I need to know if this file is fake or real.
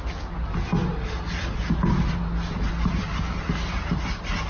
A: real